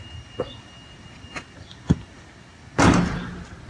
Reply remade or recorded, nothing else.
recorded